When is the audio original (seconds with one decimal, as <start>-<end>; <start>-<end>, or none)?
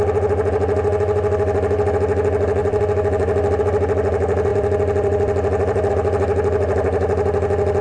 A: 0.0-2.6; 3.6-4.5; 5.9-7.8